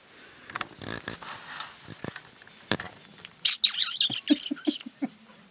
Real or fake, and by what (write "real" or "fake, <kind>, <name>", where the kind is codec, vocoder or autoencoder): real